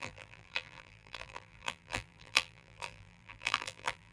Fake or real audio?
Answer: fake